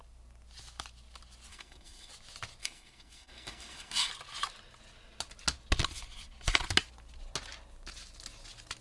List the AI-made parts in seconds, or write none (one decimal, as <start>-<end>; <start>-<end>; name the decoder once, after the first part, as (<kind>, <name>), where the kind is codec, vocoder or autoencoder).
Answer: 1.5-2.1 (codec, SNAC); 2.6-4.1